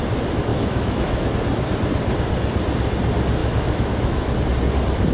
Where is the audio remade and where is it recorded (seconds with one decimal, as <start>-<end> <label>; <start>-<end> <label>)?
0.0-0.5 recorded; 0.5-1.3 remade; 1.3-3.4 recorded; 3.4-4.3 remade; 4.3-5.1 recorded